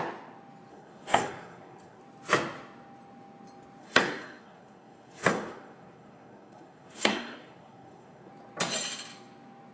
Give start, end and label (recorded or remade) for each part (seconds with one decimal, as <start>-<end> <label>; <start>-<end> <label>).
0.0-0.7 recorded; 0.7-2.0 remade; 2.0-3.8 recorded; 3.8-8.3 remade; 8.3-9.7 recorded